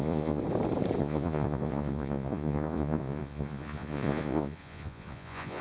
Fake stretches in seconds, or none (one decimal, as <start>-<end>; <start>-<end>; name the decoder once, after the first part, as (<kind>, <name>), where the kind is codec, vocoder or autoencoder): 0.0-0.4 (vocoder, Vocos); 1.0-5.6